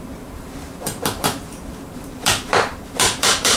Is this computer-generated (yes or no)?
yes